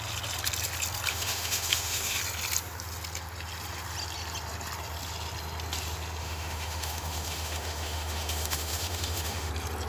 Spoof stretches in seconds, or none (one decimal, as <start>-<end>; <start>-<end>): 1.1-2.2; 6.2-9.5